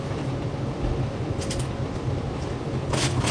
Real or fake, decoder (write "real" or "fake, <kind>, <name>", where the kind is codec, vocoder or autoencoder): real